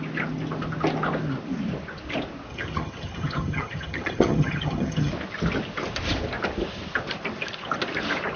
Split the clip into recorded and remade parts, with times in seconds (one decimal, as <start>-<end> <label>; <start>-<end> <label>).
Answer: 0.0-2.5 recorded; 2.5-5.1 remade; 5.1-8.4 recorded